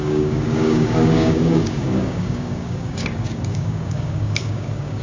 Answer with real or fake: fake